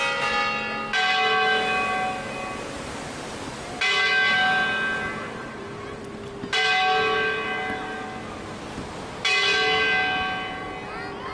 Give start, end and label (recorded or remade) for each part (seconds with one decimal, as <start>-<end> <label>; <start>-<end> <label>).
0.0-5.4 recorded; 5.4-6.0 remade; 6.0-11.3 recorded